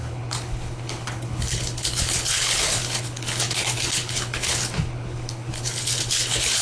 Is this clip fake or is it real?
fake